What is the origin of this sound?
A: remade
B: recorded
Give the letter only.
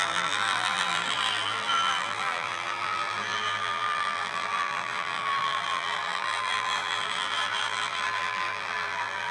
A